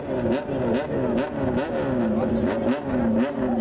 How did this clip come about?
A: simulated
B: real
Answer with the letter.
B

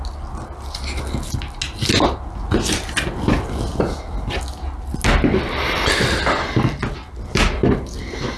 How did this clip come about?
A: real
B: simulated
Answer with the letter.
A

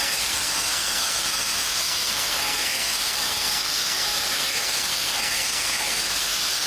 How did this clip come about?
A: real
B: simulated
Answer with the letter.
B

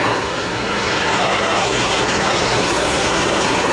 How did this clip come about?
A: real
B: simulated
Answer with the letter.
B